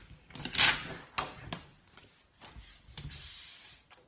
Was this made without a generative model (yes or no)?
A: yes